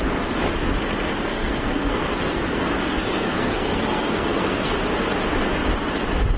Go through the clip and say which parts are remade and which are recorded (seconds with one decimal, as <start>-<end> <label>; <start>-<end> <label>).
0.0-1.3 recorded; 1.3-4.8 remade; 4.8-6.4 recorded